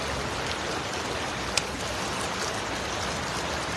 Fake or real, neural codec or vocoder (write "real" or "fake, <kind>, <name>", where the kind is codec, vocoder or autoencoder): real